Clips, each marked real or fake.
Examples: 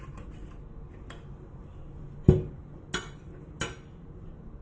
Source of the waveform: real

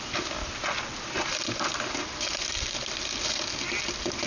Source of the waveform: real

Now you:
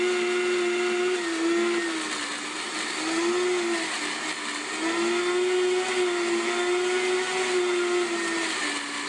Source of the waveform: real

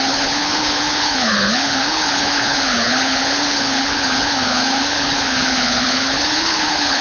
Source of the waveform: fake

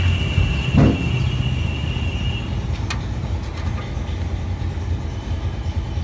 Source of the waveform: real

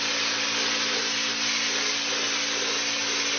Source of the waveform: real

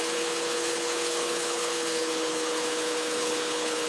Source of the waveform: fake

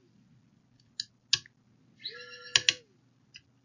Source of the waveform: real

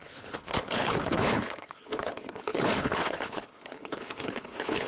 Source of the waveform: fake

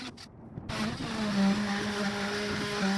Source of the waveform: real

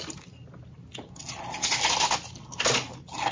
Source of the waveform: real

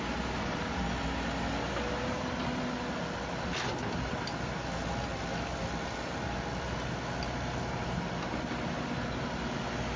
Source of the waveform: real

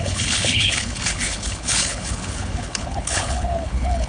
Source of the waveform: fake